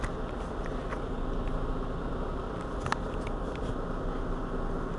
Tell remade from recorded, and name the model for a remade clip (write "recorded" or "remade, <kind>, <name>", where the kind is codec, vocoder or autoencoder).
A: recorded